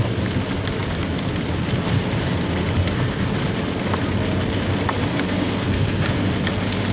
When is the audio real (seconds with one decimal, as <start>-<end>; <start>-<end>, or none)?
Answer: 0.0-2.8; 3.3-5.1; 6.4-6.9